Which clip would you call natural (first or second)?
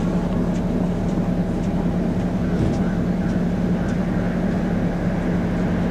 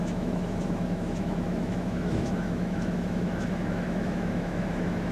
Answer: first